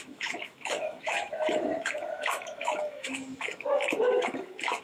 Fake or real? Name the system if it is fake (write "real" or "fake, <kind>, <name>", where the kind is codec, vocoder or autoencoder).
fake, autoencoder, DAC-VAE